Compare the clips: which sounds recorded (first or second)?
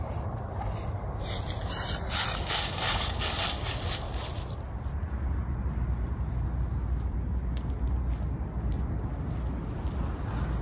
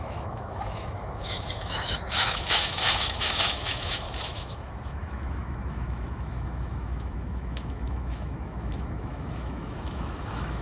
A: first